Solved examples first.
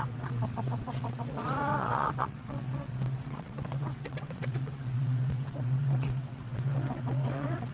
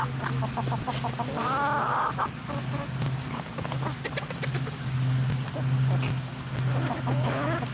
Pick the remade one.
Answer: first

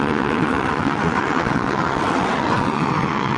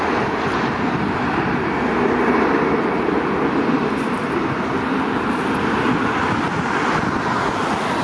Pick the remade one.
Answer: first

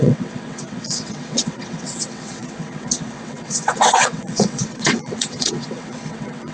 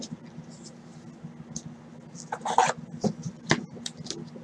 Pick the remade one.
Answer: first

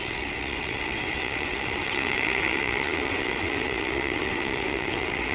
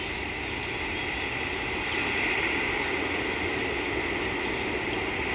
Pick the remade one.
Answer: first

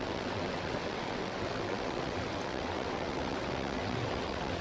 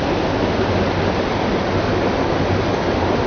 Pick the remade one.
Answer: first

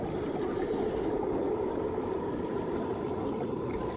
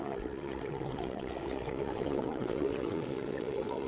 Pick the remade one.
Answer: second